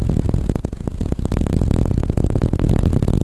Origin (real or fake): real